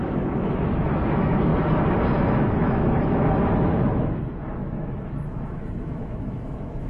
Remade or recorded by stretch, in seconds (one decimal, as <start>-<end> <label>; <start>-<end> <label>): 0.0-1.5 remade; 1.5-2.2 recorded; 2.2-6.9 remade